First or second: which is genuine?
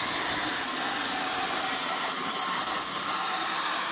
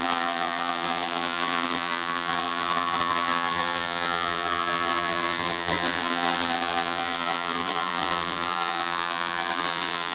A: first